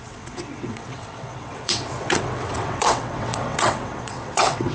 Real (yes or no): no